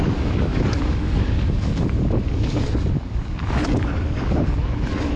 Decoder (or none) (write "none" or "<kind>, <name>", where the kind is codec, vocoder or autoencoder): codec, DAC